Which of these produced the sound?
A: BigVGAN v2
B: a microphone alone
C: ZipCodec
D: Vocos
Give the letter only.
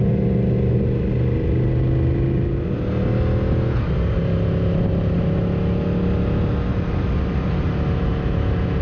B